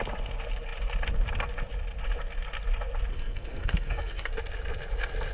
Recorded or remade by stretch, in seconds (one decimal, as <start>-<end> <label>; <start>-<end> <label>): 0.0-3.1 recorded; 3.1-4.3 remade; 4.3-5.3 recorded